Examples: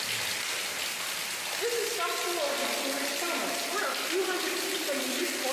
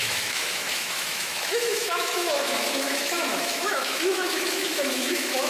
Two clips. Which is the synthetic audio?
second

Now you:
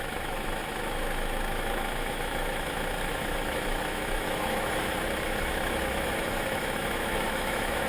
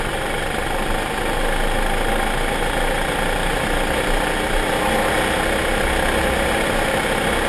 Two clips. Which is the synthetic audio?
first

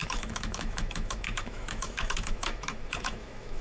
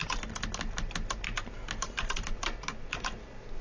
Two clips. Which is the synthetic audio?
first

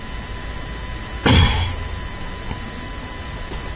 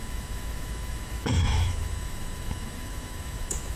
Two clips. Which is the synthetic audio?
second